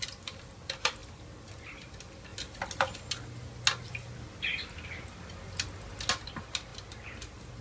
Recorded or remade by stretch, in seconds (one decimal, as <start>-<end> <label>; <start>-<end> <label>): 0.0-1.0 remade; 1.0-1.6 recorded; 1.6-2.3 remade; 2.3-6.1 recorded; 6.1-6.7 remade; 6.7-7.6 recorded